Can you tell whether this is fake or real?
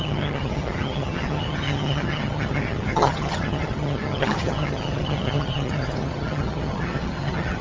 fake